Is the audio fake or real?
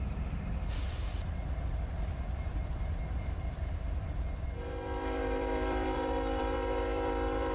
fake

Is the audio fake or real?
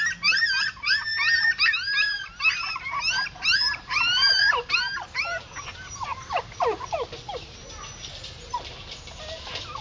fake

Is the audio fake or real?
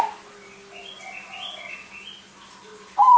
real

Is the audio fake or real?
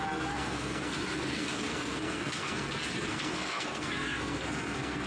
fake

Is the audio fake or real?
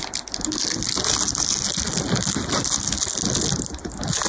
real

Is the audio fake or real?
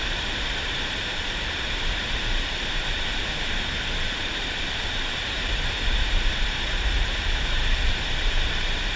fake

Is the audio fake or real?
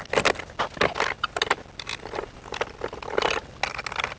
real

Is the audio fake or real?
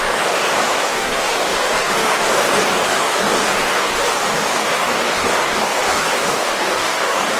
fake